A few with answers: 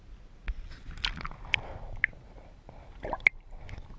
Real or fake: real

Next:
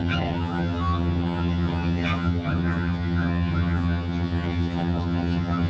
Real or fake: fake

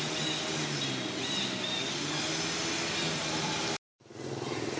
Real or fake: real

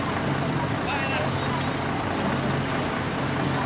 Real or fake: real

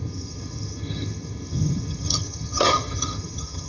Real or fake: fake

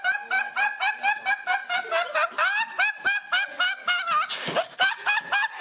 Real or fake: real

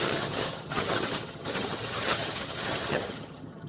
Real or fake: fake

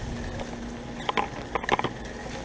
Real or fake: real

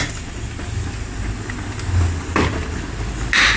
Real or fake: real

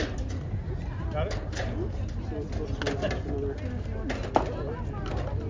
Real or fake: real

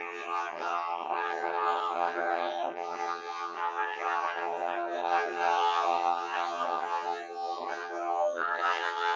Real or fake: fake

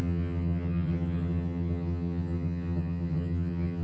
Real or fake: fake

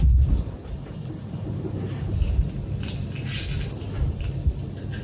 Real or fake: real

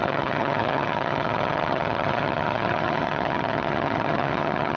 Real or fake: fake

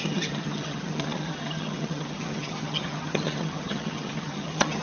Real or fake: fake